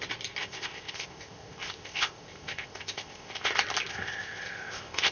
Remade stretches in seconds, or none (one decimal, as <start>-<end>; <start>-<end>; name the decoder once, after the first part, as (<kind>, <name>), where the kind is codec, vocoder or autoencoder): 0.4-3.5 (codec, ZipCodec); 3.9-5.1